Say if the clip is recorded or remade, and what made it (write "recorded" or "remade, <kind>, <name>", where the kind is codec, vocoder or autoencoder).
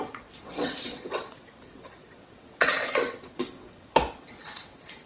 remade, vocoder, WaveNeXt